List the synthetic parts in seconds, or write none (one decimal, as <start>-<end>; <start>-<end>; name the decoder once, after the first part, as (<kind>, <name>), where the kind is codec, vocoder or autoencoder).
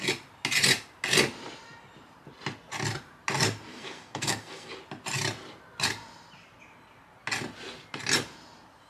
3.7-4.7 (codec, SNAC)